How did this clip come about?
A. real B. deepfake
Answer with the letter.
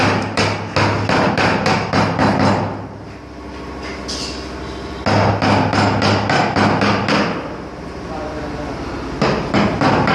A